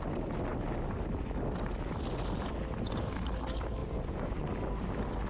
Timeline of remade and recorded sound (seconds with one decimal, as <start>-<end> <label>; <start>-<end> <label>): 0.0-3.8 recorded; 3.8-4.5 remade; 4.5-5.3 recorded